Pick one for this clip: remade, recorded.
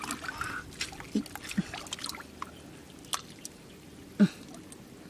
recorded